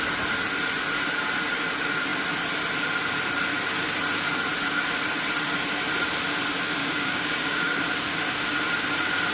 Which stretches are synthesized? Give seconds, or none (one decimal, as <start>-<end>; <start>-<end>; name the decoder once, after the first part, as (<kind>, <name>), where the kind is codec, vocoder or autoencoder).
6.8-7.8 (codec, DAC)